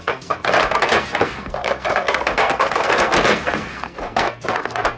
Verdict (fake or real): fake